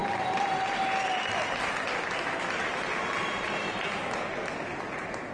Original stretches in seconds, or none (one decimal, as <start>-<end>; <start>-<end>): 0.5-2.7; 4.0-5.3